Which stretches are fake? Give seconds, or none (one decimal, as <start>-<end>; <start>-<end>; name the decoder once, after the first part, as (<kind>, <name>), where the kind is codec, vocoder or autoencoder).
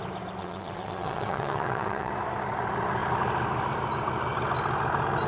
0.4-2.1 (vocoder, WaveNeXt)